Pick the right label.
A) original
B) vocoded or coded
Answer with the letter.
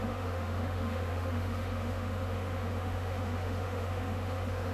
B